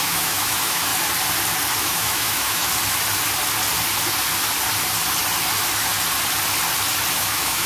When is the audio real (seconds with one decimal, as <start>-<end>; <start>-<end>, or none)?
0.9-1.8; 2.6-7.1